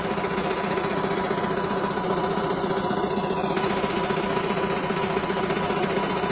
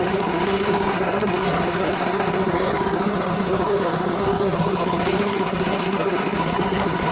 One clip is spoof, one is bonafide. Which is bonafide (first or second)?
first